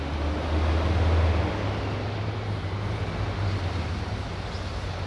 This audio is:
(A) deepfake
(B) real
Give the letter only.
B